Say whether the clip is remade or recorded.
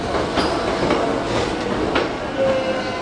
recorded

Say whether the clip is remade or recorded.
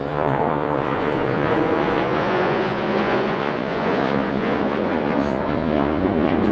remade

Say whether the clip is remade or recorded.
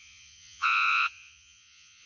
remade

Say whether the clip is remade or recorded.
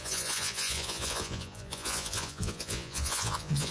remade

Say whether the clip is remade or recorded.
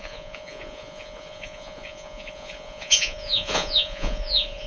remade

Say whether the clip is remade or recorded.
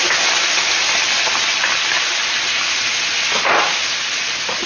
recorded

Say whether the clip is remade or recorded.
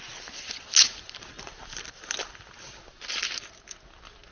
recorded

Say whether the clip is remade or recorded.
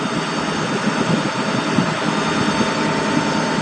recorded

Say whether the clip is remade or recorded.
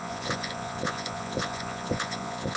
remade